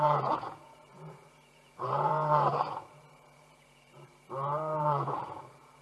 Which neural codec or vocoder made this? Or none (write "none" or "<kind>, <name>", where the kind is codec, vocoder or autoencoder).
vocoder, Vocos